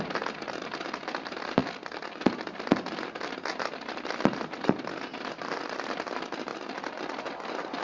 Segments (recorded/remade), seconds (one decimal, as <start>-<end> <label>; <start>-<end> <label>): 0.0-7.8 recorded